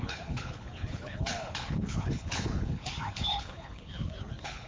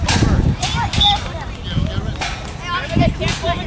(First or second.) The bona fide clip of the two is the second